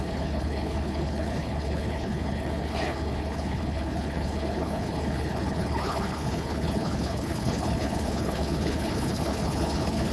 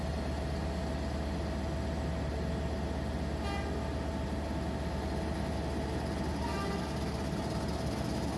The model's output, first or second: first